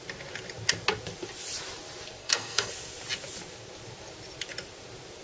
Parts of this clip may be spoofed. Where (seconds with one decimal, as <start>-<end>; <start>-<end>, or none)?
2.2-2.7